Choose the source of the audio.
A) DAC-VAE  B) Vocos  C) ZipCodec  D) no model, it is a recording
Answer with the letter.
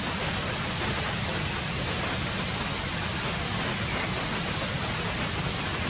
D